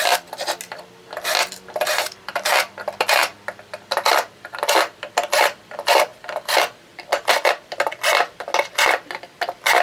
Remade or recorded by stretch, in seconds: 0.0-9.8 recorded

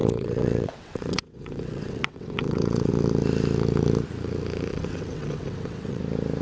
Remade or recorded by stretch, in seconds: 0.0-2.9 remade; 2.9-4.7 recorded; 4.7-6.0 remade; 6.0-6.4 recorded

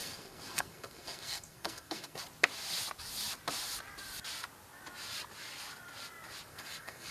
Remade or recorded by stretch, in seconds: 0.0-2.2 remade; 2.2-6.5 recorded; 6.5-7.1 remade

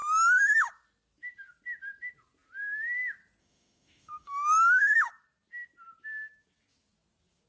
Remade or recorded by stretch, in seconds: 0.0-0.7 remade; 0.7-3.4 recorded; 3.4-5.1 remade; 5.1-7.5 recorded

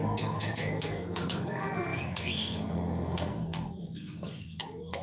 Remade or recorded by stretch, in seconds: 0.0-5.0 remade

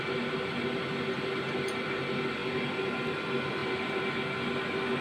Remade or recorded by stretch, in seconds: 0.0-2.4 recorded; 2.4-3.0 remade; 3.0-3.6 recorded; 3.6-4.1 remade; 4.1-5.0 recorded